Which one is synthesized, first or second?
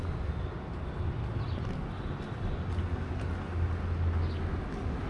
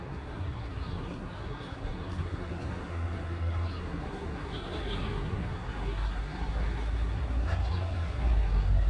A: second